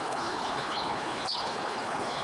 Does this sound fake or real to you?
fake